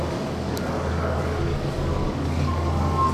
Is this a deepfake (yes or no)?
yes